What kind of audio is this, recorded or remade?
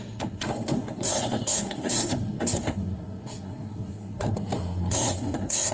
remade